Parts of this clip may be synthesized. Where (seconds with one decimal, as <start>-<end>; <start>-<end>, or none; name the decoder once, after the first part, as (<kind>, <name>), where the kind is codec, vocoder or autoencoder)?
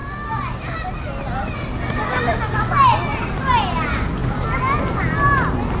none